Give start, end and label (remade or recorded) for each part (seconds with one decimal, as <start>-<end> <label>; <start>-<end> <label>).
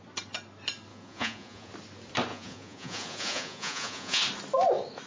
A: 0.0-0.9 recorded; 0.9-1.7 remade; 1.7-2.3 recorded; 2.3-4.2 remade; 4.2-5.1 recorded